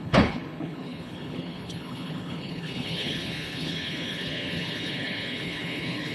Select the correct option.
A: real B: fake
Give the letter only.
B